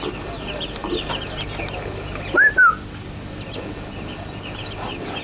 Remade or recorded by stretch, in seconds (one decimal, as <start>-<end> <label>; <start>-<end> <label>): 0.0-0.8 recorded; 0.8-1.6 remade; 1.6-5.2 recorded